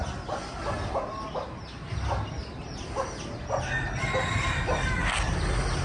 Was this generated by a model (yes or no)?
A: no